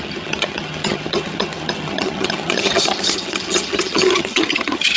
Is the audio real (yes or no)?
no